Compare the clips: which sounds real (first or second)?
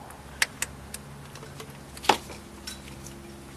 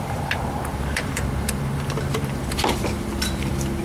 first